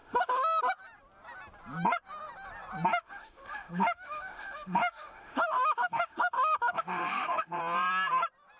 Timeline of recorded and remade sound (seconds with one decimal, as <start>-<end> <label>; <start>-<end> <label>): 0.0-0.6 remade; 0.6-2.9 recorded; 2.9-7.6 remade; 7.6-8.6 recorded